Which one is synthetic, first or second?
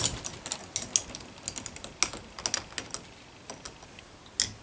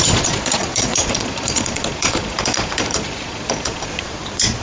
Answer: second